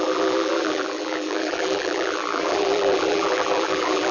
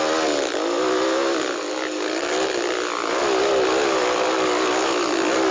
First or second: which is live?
second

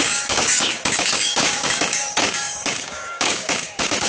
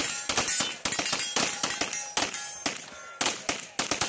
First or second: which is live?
second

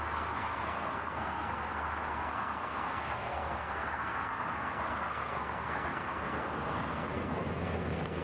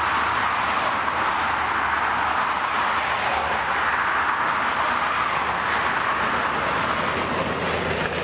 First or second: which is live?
second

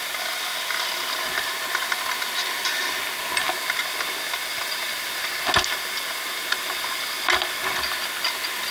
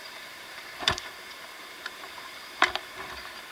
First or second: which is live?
first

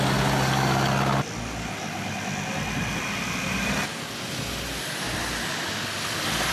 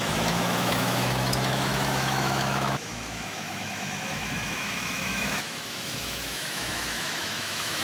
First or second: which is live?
first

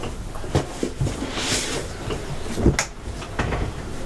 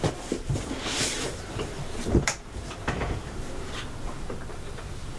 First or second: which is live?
first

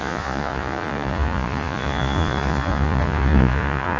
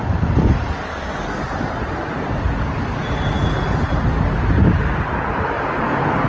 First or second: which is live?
second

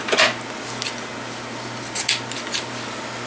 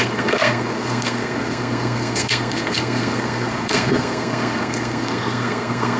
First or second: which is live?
first